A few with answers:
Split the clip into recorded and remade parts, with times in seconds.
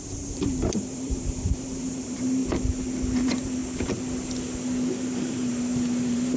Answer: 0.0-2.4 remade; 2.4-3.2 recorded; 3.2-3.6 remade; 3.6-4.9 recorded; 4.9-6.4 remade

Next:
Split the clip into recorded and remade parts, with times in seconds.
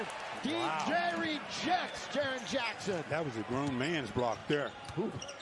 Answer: 0.0-0.7 recorded; 0.7-1.8 remade; 1.8-4.4 recorded; 4.4-5.4 remade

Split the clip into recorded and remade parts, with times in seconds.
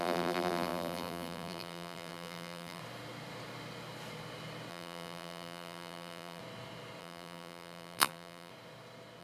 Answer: 0.0-2.8 remade; 2.8-4.7 recorded; 4.7-6.4 remade; 6.4-7.0 recorded; 7.0-8.5 remade; 8.5-9.2 recorded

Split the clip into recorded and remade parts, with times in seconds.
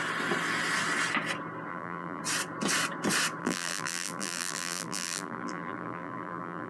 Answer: 0.0-1.7 recorded; 1.7-2.2 remade; 2.2-3.4 recorded; 3.4-6.7 remade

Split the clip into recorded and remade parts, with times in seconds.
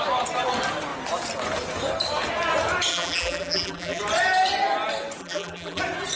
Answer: 0.0-2.9 recorded; 2.9-4.0 remade; 4.0-5.2 recorded; 5.2-5.8 remade; 5.8-6.2 recorded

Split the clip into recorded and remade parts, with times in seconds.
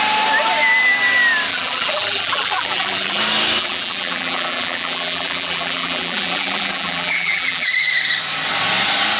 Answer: 0.0-1.5 recorded; 1.5-3.2 remade; 3.2-3.6 recorded; 3.6-7.7 remade; 7.7-9.2 recorded